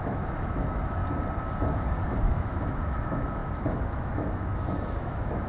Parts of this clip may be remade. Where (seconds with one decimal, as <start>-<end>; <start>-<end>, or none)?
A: 0.0-1.0; 2.2-5.5